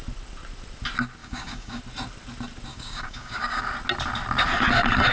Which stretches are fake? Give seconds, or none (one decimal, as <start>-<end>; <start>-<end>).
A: 1.2-1.8; 2.7-3.6